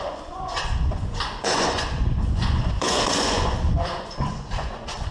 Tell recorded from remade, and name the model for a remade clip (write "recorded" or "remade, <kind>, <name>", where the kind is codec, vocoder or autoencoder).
remade, vocoder, Vocos